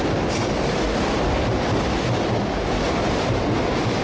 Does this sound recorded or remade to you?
recorded